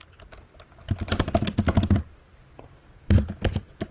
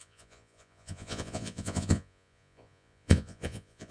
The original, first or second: first